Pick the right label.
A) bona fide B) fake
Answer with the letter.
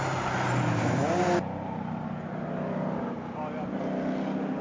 A